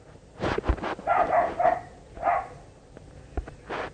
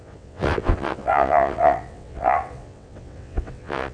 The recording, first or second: first